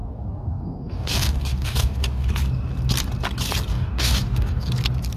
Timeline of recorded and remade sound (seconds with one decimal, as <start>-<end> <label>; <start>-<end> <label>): 0.0-2.3 remade; 2.3-3.7 recorded; 3.7-4.7 remade; 4.7-5.2 recorded